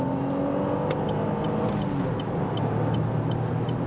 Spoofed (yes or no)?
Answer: no